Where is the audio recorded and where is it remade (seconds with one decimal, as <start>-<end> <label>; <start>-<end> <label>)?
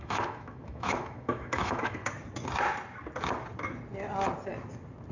0.0-2.0 remade; 2.0-5.1 recorded